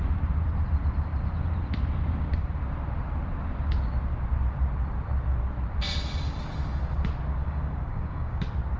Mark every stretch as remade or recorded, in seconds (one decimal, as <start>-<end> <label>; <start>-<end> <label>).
0.0-7.4 recorded; 7.4-8.4 remade; 8.4-8.8 recorded